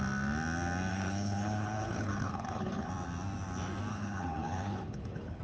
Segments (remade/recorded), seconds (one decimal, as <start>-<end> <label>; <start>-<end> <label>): 0.0-0.9 recorded; 0.9-2.9 remade; 2.9-3.9 recorded; 3.9-5.4 remade